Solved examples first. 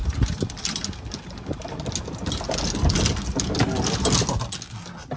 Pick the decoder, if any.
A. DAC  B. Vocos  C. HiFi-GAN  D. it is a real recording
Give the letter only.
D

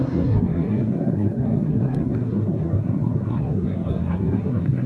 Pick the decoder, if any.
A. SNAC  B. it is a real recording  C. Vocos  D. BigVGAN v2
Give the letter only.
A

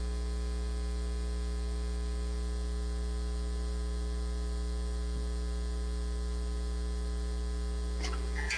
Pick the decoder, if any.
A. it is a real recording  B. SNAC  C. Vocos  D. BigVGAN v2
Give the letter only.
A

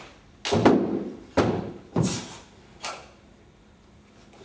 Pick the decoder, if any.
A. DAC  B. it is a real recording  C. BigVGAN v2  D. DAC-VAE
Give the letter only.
B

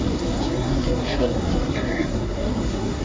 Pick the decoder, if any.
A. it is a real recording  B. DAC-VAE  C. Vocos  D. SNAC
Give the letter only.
D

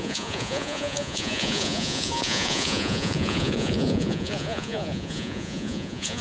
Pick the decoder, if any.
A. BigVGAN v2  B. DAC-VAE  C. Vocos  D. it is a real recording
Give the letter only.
C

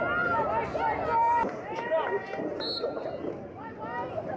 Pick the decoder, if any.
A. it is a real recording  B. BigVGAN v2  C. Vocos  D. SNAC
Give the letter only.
A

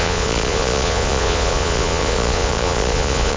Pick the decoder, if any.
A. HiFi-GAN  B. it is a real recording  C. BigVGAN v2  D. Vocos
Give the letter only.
D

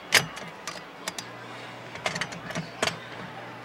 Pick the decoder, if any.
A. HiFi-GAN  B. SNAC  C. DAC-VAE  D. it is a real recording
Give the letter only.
D